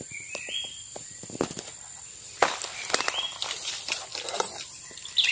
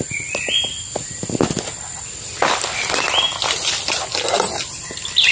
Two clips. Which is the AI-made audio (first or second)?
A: first